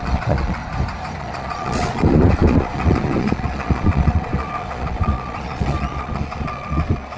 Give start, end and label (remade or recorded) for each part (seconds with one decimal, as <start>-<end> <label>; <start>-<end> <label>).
0.0-0.6 remade; 0.6-1.2 recorded; 1.2-7.2 remade